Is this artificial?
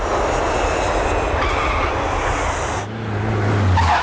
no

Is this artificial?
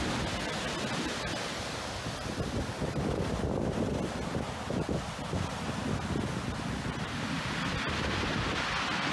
no